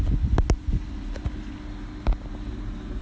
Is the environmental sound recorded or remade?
recorded